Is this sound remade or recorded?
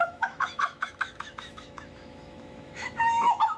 remade